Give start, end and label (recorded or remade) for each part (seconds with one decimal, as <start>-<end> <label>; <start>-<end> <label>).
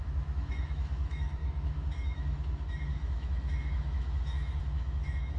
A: 0.0-5.4 remade